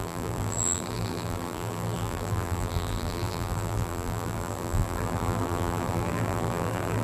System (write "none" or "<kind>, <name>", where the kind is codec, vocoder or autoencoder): vocoder, BigVGAN v2